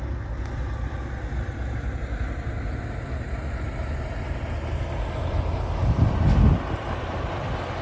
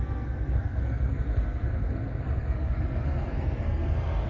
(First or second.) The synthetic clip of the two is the second